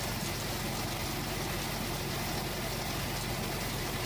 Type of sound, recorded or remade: recorded